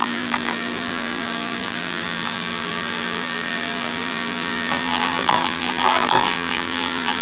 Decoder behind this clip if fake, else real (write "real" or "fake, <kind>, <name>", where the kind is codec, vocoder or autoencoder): fake, vocoder, BigVGAN v2